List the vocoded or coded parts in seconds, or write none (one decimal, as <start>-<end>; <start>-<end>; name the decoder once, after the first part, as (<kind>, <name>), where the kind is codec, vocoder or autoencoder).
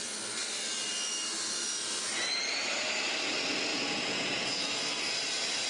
3.7-4.6 (vocoder, Vocos)